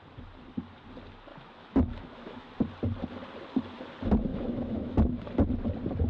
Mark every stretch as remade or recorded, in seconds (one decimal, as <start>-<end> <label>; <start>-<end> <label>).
0.0-1.3 recorded; 1.3-2.5 remade; 2.5-4.3 recorded; 4.3-5.2 remade; 5.2-6.1 recorded